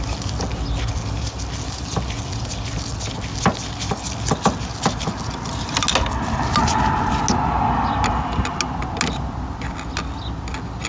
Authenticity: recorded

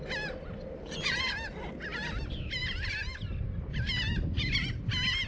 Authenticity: recorded